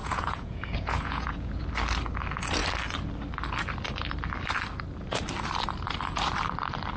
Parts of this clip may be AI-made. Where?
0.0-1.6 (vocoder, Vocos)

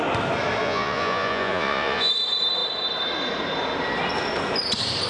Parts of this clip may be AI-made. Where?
0.6-2.1 (vocoder, Vocos)

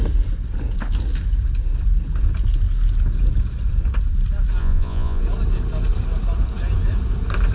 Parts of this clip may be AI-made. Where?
4.6-5.2 (vocoder, Vocos)

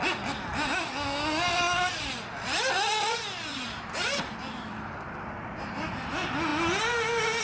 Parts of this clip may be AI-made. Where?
none

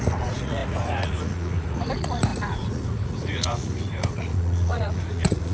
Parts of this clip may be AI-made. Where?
0.0-5.5 (vocoder, Vocos)

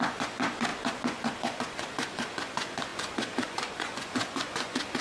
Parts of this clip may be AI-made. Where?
0.0-5.0 (vocoder, Vocos)

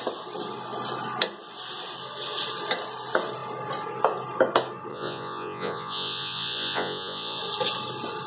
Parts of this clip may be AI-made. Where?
4.9-7.4 (vocoder, Vocos)

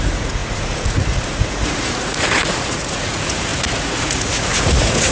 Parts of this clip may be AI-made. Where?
0.0-5.1 (vocoder, Vocos)